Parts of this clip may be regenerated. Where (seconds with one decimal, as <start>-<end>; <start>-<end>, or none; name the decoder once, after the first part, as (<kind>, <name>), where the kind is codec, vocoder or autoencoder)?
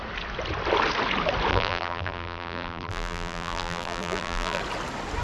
1.5-4.6 (vocoder, BigVGAN v2)